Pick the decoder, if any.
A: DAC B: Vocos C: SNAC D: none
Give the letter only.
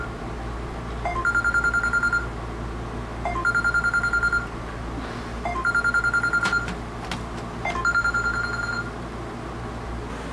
D